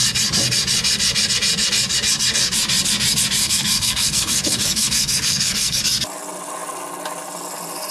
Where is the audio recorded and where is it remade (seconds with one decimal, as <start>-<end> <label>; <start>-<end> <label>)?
0.0-3.4 recorded; 3.4-5.8 remade; 5.8-7.9 recorded